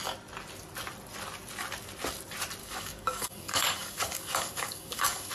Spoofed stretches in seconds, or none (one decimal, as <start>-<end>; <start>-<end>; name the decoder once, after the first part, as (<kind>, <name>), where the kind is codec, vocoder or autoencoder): 2.6-5.3 (codec, DAC)